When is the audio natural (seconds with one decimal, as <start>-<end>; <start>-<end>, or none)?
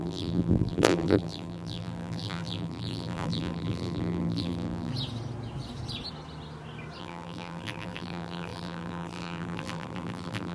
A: 4.9-7.0